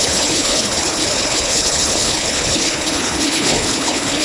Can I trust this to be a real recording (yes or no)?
no